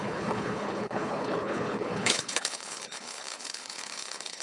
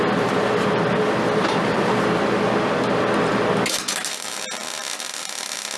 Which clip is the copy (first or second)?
first